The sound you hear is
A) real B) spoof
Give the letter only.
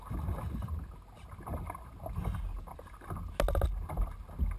A